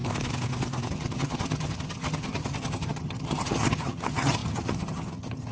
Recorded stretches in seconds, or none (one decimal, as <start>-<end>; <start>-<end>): 0.0-0.9